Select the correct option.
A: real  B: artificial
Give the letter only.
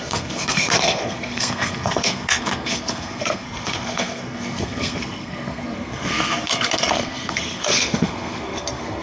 B